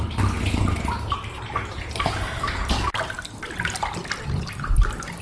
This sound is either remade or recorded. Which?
recorded